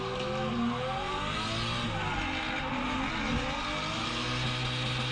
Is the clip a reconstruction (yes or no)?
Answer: no